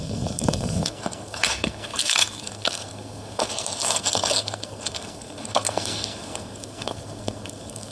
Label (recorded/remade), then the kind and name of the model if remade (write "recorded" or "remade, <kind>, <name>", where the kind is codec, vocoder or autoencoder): remade, codec, SNAC